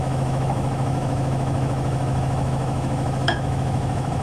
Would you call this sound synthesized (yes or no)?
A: yes